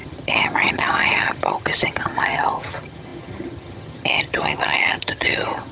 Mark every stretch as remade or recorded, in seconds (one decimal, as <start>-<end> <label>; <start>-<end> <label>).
0.0-5.7 remade